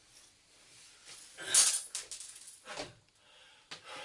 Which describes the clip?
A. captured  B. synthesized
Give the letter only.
A